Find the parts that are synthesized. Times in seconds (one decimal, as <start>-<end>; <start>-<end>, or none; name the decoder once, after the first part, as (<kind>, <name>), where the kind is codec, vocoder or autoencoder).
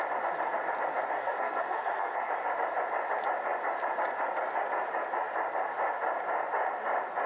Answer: 1.2-2.3 (codec, SNAC)